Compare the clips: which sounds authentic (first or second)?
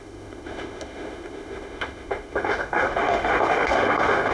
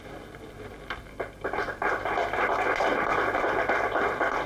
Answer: second